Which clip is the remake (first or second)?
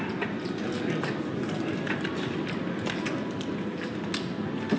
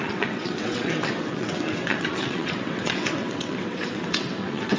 second